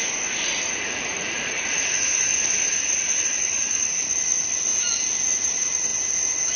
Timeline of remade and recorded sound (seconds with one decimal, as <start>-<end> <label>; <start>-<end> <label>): 0.0-2.2 remade; 2.2-2.7 recorded; 2.7-4.7 remade; 4.7-5.3 recorded; 5.3-5.9 remade; 5.9-6.6 recorded